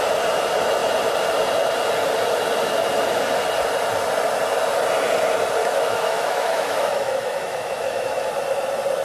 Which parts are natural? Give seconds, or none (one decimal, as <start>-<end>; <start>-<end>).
0.0-5.6; 8.3-9.0

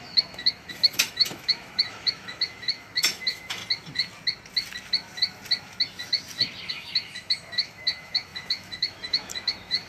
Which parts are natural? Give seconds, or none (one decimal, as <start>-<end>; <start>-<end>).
3.6-6.7

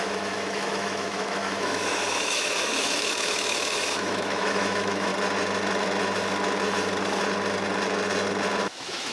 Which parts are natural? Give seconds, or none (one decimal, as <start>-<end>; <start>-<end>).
5.1-8.6

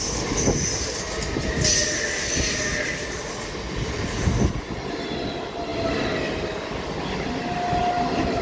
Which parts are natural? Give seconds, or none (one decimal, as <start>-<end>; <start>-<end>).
0.0-8.4

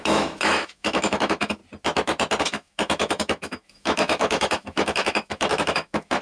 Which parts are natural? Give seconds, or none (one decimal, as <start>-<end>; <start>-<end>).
1.6-2.4